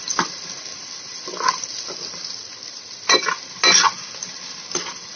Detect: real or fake real